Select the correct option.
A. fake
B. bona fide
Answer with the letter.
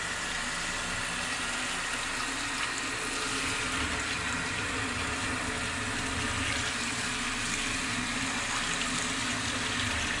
B